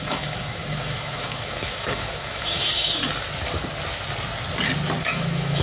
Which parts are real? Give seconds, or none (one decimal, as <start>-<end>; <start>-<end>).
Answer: 3.0-5.0